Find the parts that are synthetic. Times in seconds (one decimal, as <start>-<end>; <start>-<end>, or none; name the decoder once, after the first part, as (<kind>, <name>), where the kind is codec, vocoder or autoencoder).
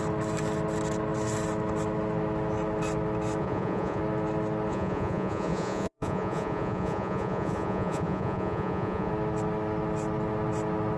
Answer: 3.4-4.0 (vocoder, Vocos); 4.7-9.1